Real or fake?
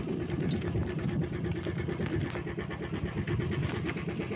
real